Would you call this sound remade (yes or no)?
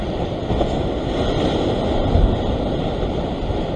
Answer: no